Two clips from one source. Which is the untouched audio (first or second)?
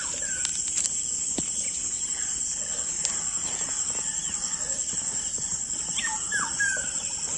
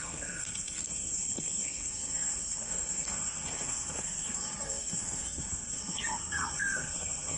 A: first